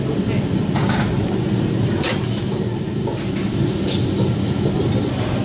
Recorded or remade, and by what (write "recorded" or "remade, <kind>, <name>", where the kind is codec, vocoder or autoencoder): recorded